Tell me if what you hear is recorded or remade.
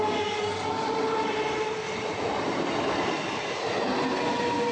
recorded